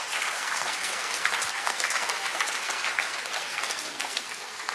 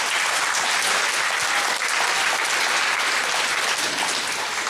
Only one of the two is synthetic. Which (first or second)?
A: first